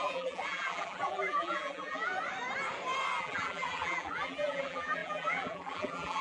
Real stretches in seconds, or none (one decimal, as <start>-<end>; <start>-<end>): 2.1-3.2